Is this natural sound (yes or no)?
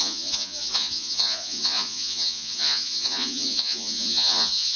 no